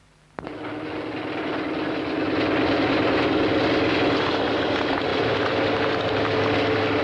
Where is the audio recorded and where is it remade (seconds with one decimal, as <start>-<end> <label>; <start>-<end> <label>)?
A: 0.0-7.0 recorded